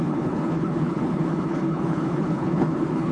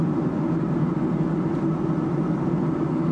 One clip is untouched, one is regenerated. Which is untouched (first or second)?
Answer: second